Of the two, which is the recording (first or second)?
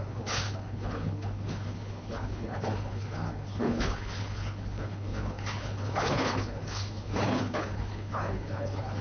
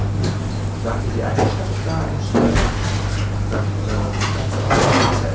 second